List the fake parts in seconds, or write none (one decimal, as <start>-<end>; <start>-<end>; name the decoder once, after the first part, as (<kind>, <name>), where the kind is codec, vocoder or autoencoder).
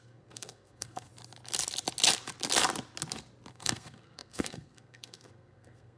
0.0-1.1 (codec, SNAC); 3.5-6.0